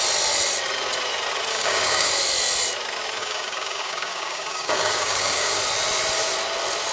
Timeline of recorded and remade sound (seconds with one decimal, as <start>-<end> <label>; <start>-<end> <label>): 0.0-1.5 recorded; 1.5-2.1 remade; 2.1-3.2 recorded; 3.2-5.6 remade; 5.6-6.9 recorded